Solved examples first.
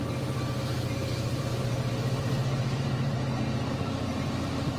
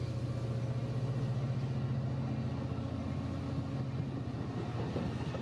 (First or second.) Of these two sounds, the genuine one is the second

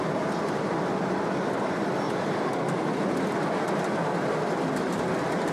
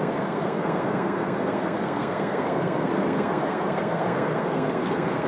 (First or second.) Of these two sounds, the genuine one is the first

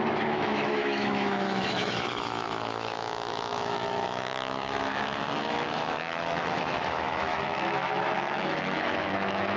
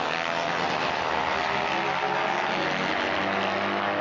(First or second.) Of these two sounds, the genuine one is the second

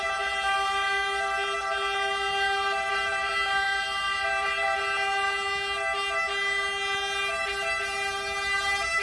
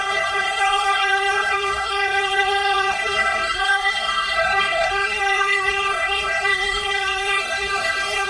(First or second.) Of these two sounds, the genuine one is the first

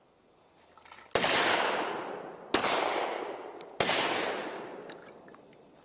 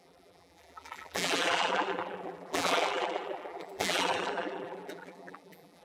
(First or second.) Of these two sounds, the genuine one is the first